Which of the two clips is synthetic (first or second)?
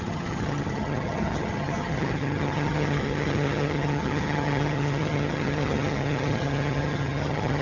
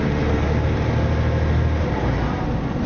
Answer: first